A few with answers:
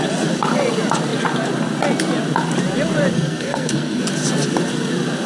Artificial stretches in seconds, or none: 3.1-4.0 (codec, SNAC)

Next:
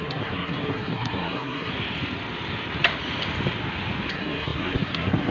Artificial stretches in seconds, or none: 0.0-1.7 (codec, SNAC); 4.1-5.3